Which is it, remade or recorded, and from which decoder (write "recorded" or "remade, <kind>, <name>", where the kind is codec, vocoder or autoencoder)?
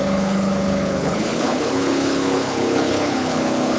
remade, codec, HILCodec